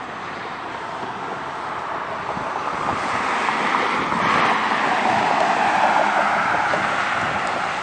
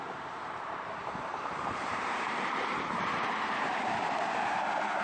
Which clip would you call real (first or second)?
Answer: first